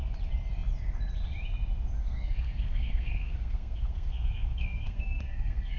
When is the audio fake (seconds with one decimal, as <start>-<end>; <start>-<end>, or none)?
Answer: 2.0-5.8